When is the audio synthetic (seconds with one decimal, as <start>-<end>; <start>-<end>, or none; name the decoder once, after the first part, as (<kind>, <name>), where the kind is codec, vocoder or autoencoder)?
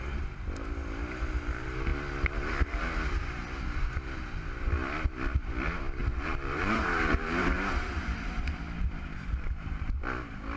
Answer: 6.0-8.6 (vocoder, BigVGAN v2)